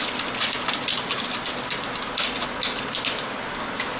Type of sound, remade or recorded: recorded